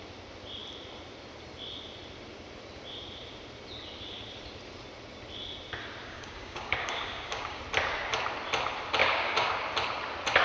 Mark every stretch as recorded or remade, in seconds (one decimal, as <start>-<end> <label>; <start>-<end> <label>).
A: 0.0-6.0 recorded; 6.0-7.6 remade; 7.6-9.0 recorded; 9.0-9.6 remade; 9.6-10.4 recorded